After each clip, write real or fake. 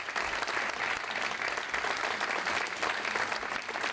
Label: real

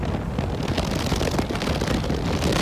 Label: real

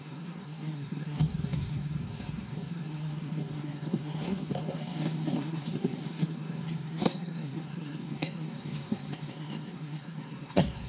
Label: fake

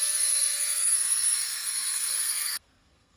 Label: fake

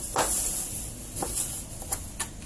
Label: real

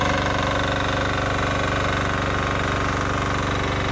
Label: real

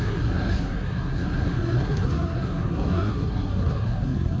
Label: fake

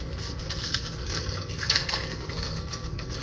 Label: fake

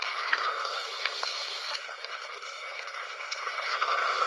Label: fake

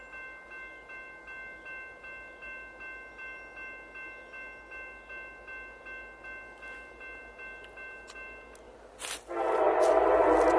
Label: real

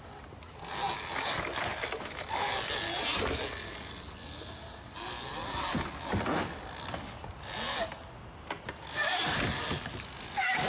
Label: real